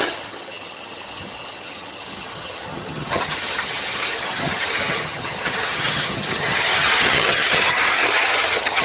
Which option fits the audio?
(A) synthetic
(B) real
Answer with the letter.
A